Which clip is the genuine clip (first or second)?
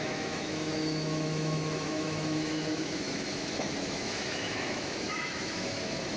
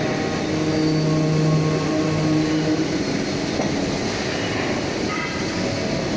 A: second